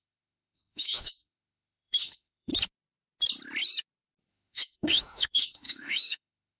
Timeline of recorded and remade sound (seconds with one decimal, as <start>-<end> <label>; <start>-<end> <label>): 0.0-2.5 remade; 2.5-4.3 recorded; 4.3-6.6 remade